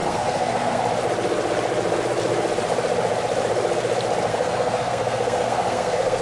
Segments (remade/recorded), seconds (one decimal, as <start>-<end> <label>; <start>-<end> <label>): 0.0-0.8 remade; 0.8-4.3 recorded; 4.3-6.2 remade